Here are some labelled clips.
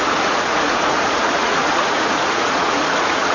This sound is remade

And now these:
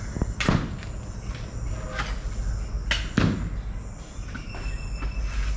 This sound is recorded